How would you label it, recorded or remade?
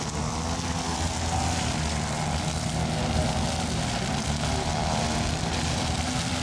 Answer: recorded